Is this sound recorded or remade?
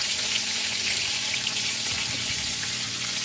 remade